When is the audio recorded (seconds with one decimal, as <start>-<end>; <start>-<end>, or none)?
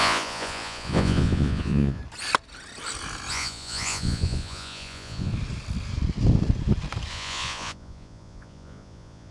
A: 2.0-3.3; 5.3-7.1